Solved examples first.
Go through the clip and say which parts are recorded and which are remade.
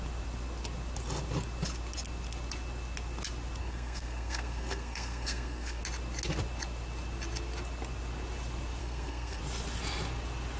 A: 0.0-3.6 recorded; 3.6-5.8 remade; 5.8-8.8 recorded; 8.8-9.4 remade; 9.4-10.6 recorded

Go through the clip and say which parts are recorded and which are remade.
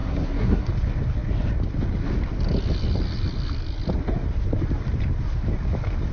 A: 0.0-0.7 remade; 0.7-6.1 recorded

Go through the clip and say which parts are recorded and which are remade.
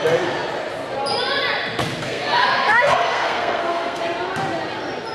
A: 0.0-2.0 recorded; 2.0-4.0 remade; 4.0-5.1 recorded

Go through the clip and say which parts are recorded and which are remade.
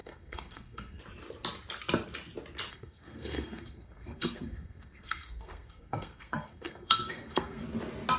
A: 0.0-1.0 remade; 1.0-2.7 recorded; 2.7-7.6 remade; 7.6-8.2 recorded